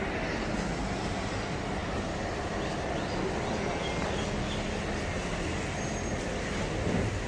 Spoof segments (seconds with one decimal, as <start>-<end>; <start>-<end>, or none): none